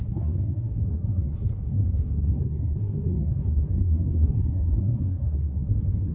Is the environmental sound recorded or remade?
remade